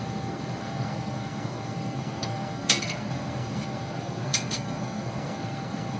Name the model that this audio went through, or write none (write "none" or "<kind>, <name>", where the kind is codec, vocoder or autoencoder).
codec, SNAC